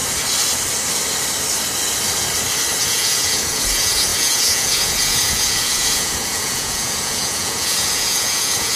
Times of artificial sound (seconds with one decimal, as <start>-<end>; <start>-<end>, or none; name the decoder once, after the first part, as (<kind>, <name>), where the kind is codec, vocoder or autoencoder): 2.8-8.8 (vocoder, Vocos)